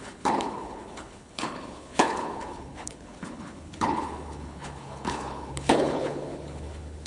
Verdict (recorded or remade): remade